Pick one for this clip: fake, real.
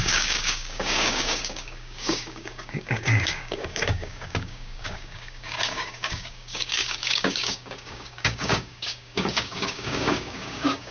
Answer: fake